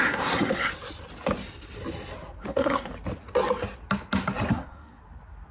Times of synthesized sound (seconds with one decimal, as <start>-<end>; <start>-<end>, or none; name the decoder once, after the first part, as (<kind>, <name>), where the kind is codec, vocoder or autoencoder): 0.0-0.7 (codec, SNAC); 2.4-2.9; 4.5-5.0